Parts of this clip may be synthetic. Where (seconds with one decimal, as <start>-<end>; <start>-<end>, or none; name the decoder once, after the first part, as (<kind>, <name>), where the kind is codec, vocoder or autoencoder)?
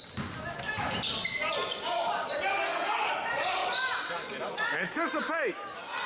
2.5-3.1 (codec, SNAC)